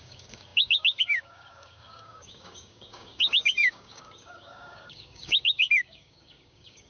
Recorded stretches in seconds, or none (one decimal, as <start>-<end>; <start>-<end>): none